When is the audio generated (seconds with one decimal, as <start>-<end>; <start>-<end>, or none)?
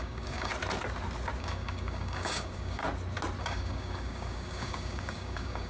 0.0-0.5; 1.4-2.8; 3.4-5.7